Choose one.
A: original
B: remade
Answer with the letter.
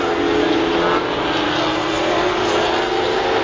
A